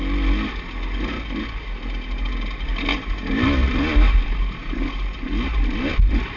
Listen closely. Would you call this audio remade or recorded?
recorded